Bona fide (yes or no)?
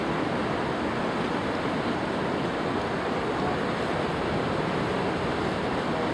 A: yes